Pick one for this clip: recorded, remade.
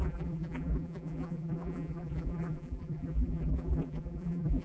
remade